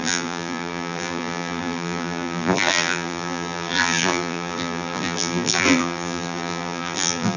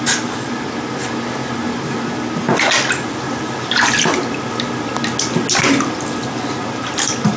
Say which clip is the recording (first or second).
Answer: second